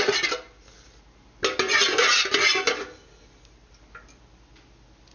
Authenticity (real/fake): real